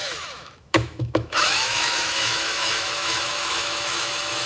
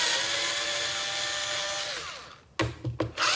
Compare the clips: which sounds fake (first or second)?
first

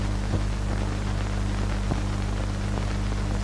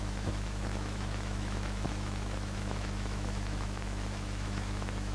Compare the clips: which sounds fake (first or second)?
second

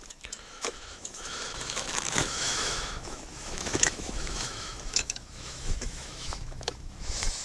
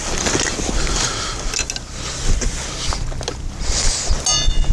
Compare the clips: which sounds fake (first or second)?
first